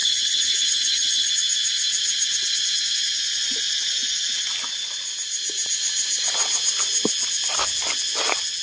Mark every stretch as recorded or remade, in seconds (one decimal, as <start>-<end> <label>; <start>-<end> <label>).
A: 0.0-1.3 remade; 1.3-8.6 recorded